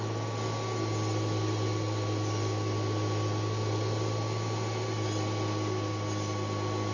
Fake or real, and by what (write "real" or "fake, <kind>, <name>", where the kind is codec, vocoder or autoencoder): real